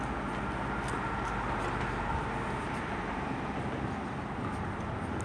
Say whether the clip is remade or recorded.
recorded